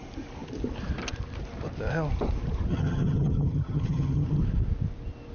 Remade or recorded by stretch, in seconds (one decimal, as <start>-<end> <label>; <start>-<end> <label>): 0.0-2.7 recorded; 2.7-4.4 remade; 4.4-5.3 recorded